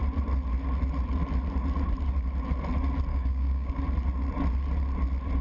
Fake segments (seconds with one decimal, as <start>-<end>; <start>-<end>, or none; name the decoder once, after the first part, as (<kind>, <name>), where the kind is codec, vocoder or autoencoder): 3.1-3.8 (codec, DAC)